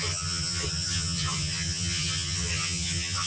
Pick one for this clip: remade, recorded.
remade